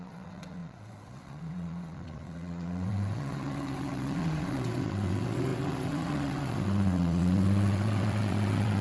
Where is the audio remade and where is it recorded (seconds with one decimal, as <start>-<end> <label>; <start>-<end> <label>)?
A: 0.0-8.8 remade